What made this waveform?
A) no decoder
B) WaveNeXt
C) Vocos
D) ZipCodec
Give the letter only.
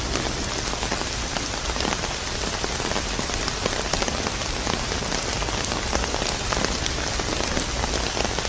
A